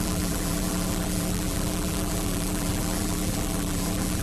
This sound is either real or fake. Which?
fake